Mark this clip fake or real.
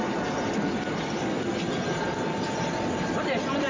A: real